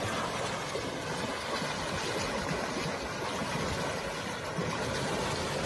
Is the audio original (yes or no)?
yes